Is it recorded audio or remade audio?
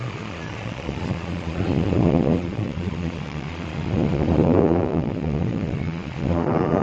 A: remade